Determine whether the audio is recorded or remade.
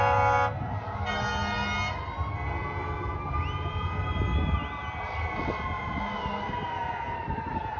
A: recorded